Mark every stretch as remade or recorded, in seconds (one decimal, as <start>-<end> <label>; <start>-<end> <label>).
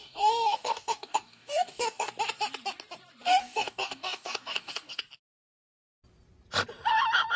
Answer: 0.0-2.1 remade; 2.1-3.4 recorded; 3.4-5.0 remade; 5.0-7.4 recorded